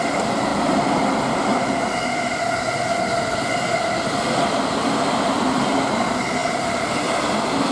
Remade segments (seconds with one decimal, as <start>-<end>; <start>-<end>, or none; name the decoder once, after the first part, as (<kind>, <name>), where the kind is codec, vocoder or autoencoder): 6.4-6.9 (vocoder, BigVGAN v2)